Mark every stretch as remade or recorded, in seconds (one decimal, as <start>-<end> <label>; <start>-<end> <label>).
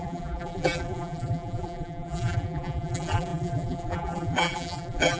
0.0-5.2 remade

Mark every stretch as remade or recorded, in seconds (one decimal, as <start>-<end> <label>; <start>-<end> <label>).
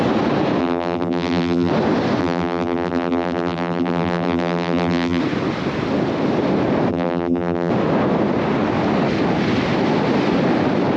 0.0-0.6 recorded; 0.6-1.7 remade; 1.7-2.2 recorded; 2.2-5.2 remade; 5.2-6.9 recorded; 6.9-7.7 remade; 7.7-11.0 recorded